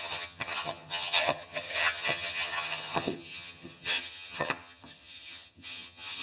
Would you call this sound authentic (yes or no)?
no